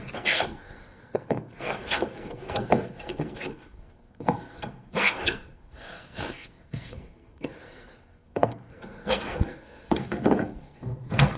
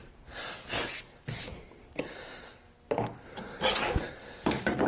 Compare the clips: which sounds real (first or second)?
second